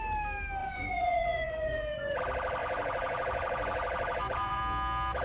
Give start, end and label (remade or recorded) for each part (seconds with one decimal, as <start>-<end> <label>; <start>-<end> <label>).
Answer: 0.0-0.6 recorded; 0.6-2.2 remade; 2.2-2.6 recorded; 2.6-4.6 remade; 4.6-5.2 recorded